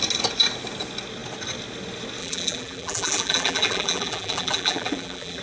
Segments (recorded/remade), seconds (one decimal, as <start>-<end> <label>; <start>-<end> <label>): 0.0-2.2 recorded; 2.2-5.4 remade